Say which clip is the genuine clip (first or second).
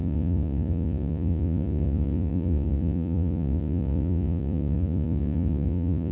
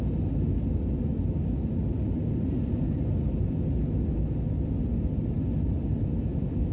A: second